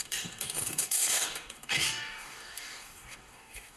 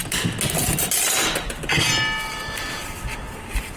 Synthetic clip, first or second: first